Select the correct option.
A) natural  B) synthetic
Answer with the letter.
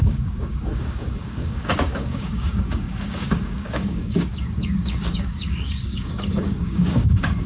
B